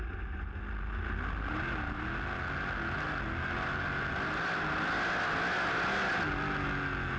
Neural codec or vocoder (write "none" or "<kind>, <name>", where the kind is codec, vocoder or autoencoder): none